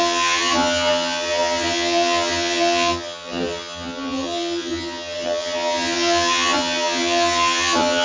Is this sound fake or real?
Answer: fake